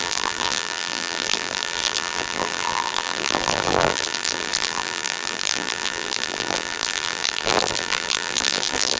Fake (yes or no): yes